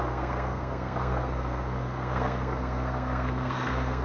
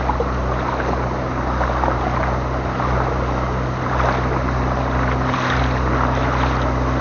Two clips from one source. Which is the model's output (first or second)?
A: first